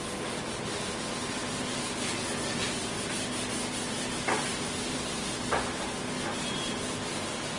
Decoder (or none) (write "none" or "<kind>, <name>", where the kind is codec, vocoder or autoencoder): none